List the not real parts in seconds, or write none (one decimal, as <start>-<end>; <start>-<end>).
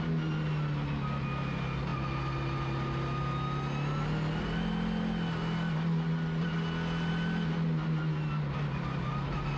none